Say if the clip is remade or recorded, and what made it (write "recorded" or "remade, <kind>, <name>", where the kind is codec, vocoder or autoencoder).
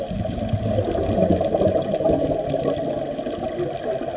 recorded